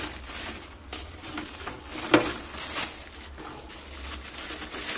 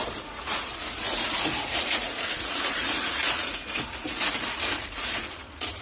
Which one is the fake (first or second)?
second